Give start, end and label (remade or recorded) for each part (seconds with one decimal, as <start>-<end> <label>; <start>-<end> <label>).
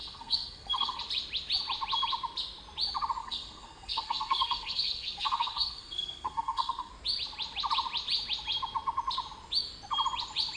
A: 0.0-1.0 remade; 1.0-3.2 recorded; 3.2-6.9 remade; 6.9-10.6 recorded